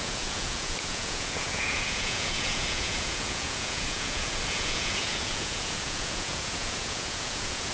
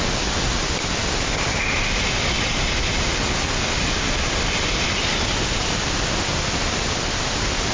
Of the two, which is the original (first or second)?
second